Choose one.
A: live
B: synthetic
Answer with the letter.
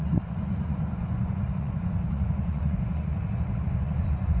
B